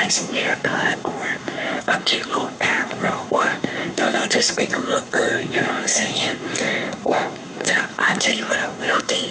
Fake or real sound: fake